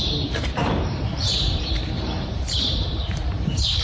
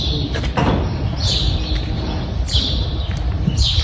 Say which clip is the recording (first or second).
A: second